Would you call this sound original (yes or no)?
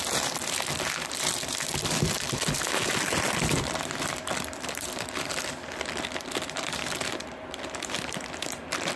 no